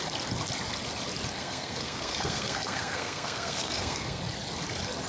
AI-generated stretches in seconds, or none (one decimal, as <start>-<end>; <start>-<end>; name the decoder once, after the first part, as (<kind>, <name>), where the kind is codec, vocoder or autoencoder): 1.4-4.2 (codec, SNAC)